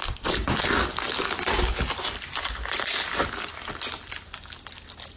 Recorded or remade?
recorded